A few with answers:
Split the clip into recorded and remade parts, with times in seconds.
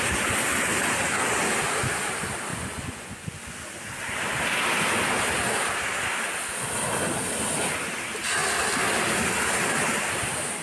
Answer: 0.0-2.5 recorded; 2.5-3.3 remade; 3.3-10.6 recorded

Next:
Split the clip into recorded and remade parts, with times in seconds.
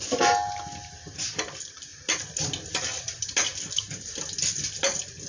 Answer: 0.0-5.3 recorded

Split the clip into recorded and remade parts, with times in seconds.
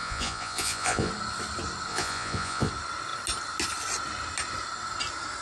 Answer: 0.0-1.1 remade; 1.1-1.9 recorded; 1.9-2.7 remade; 2.7-5.4 recorded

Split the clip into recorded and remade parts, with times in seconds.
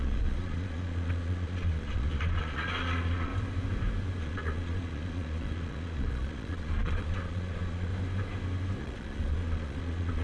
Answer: 0.0-3.3 remade; 3.3-4.2 recorded; 4.2-7.9 remade; 7.9-8.8 recorded; 8.8-10.2 remade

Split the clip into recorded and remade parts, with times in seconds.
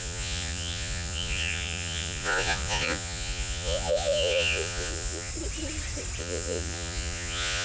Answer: 0.0-5.3 remade; 5.3-6.2 recorded; 6.2-7.6 remade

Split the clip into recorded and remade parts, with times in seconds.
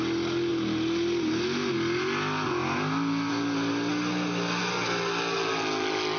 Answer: 0.0-6.2 recorded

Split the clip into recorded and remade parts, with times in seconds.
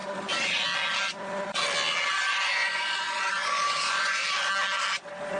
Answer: 0.0-2.3 recorded; 2.3-4.2 remade; 4.2-5.4 recorded